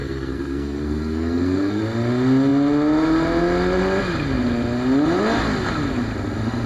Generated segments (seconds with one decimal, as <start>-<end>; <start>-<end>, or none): 0.0-1.8